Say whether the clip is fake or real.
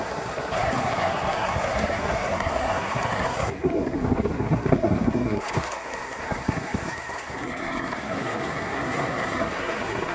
fake